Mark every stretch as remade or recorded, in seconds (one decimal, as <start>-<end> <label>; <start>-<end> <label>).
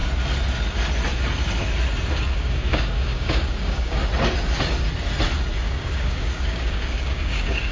0.0-2.1 recorded; 2.1-4.0 remade; 4.0-5.6 recorded; 5.6-7.7 remade